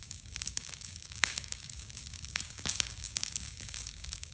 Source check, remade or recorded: remade